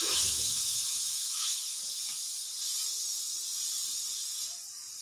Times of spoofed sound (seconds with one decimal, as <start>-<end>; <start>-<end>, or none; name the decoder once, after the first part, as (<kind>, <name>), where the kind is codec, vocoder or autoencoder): 0.0-1.8 (autoencoder, DAC-VAE)